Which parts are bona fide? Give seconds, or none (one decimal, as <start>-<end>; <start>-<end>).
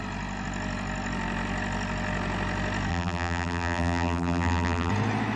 0.0-2.9; 4.9-5.4